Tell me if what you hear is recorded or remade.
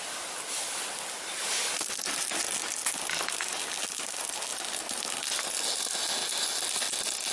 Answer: recorded